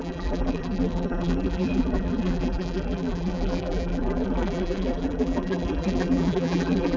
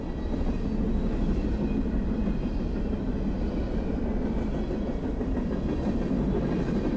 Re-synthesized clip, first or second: first